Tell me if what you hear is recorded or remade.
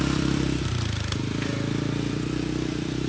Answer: remade